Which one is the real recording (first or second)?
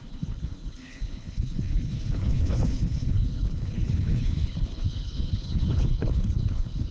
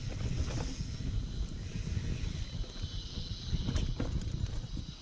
second